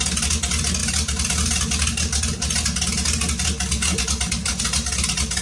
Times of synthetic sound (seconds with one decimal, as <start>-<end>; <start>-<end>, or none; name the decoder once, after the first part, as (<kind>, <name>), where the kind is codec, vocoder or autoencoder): none